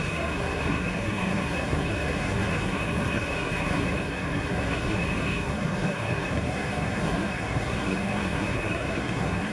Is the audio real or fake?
fake